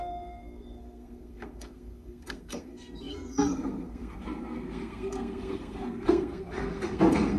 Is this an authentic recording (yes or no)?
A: no